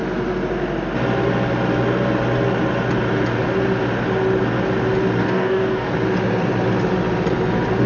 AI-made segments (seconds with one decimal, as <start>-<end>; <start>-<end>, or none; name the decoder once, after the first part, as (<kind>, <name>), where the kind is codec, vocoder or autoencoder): 5.2-5.9 (codec, DAC)